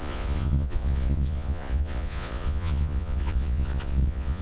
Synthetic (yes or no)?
yes